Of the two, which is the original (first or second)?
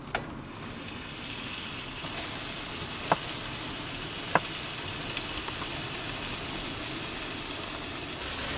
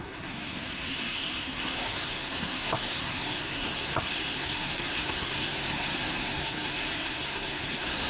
first